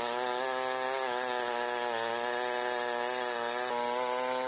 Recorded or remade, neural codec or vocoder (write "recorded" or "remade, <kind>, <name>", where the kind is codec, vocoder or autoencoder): recorded